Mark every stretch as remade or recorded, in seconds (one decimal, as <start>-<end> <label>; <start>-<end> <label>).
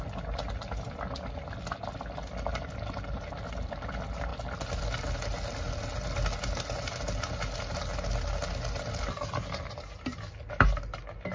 0.0-11.3 recorded